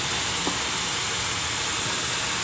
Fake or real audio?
real